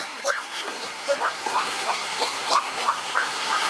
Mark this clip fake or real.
fake